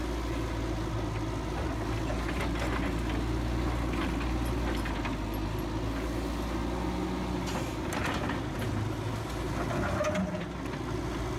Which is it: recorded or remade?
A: recorded